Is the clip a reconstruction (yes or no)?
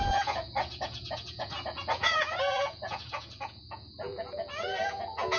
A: yes